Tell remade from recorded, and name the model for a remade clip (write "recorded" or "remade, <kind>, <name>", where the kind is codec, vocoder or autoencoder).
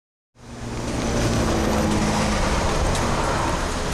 recorded